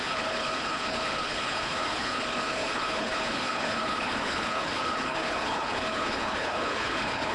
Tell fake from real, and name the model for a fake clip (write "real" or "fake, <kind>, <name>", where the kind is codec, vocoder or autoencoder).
fake, codec, HILCodec